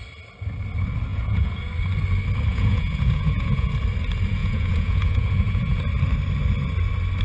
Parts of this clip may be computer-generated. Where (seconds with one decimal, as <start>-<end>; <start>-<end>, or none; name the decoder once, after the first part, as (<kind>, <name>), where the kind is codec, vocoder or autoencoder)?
1.1-1.7 (vocoder, Vocos); 2.5-3.7; 4.4-5.8